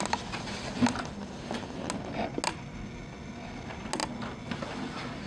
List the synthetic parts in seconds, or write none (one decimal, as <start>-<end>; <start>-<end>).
none